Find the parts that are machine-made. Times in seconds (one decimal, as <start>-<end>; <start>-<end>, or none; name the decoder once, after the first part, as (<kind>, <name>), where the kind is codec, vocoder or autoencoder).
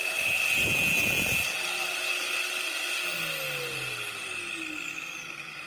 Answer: 0.0-1.1 (vocoder, BigVGAN v2)